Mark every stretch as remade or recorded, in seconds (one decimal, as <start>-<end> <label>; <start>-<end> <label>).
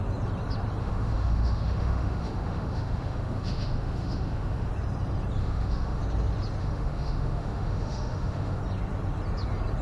0.0-0.8 recorded; 0.8-4.7 remade; 4.7-5.4 recorded; 5.4-6.0 remade; 6.0-6.6 recorded; 6.6-8.6 remade; 8.6-9.8 recorded